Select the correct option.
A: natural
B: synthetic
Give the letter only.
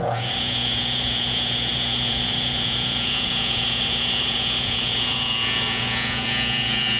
B